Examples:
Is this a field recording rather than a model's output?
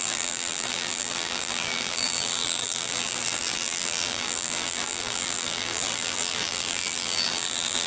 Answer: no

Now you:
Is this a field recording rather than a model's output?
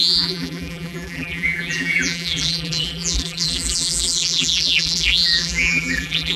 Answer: no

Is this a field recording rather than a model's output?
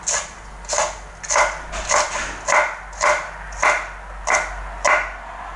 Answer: yes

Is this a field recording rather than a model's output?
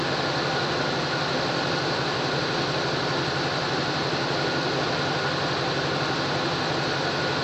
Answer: yes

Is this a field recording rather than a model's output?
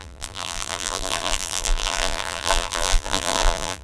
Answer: no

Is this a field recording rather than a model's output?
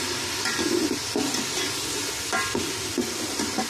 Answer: yes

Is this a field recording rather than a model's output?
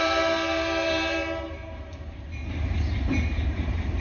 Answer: no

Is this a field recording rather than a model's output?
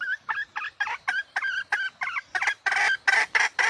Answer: yes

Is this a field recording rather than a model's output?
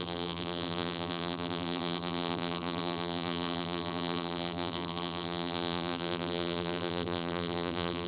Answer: no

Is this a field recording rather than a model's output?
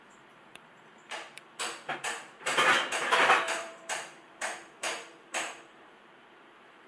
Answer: no